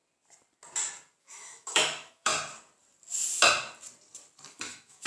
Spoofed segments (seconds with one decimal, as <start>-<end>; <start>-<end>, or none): 1.2-2.3; 4.5-5.1